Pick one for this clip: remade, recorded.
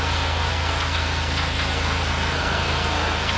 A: remade